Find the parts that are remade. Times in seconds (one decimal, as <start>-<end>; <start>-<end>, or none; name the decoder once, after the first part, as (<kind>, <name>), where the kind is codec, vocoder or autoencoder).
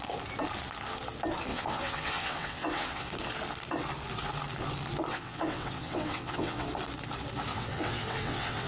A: 1.5-3.1 (vocoder, WaveNeXt); 5.1-6.7; 7.5-8.7